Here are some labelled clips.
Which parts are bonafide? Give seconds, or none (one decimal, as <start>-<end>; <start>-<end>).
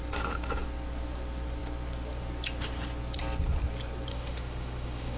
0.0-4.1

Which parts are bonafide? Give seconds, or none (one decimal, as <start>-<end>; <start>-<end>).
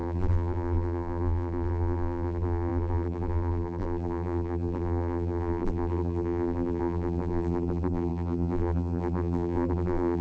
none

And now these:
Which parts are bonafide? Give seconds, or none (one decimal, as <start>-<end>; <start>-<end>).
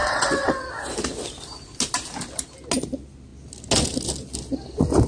0.7-5.1